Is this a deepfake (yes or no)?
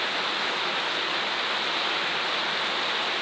no